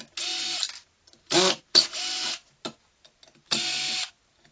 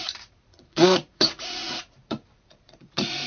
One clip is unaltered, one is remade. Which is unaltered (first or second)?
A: first